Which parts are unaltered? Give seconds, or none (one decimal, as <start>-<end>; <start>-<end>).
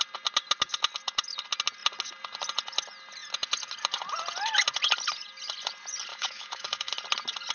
0.0-6.1; 6.9-7.5